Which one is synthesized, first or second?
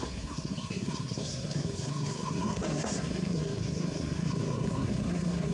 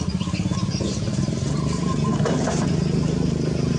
first